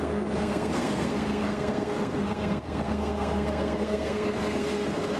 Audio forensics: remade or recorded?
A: remade